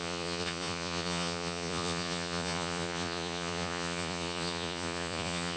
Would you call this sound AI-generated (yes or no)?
yes